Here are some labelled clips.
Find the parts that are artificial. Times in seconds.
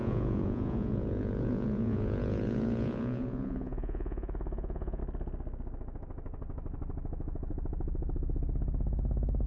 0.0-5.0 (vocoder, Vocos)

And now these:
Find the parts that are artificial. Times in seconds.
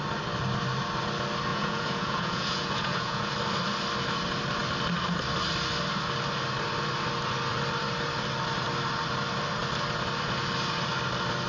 1.5-3.3 (vocoder, Vocos)